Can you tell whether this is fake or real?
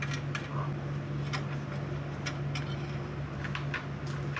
real